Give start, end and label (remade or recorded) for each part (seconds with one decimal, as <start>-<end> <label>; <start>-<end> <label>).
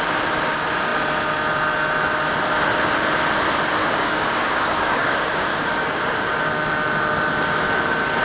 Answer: 0.0-3.8 recorded; 3.8-6.0 remade; 6.0-8.2 recorded